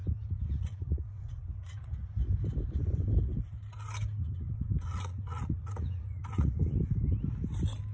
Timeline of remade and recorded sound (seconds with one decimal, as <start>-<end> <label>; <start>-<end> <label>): 0.0-2.1 remade; 2.1-4.2 recorded; 4.2-6.8 remade; 6.8-7.9 recorded